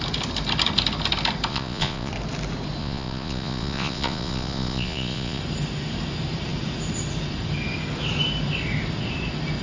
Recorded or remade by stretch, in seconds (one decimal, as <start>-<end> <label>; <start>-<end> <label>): 0.0-1.5 recorded; 1.5-2.1 remade; 2.1-2.8 recorded; 2.8-5.4 remade; 5.4-9.6 recorded